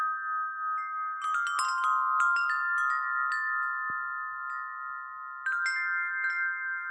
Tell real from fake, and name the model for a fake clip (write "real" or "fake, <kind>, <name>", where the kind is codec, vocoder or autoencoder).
real